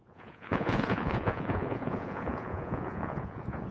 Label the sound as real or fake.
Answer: fake